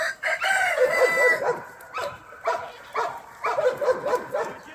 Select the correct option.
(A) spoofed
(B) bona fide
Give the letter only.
A